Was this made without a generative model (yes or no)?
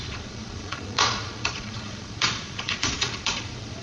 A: no